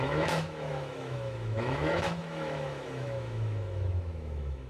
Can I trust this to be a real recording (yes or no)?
no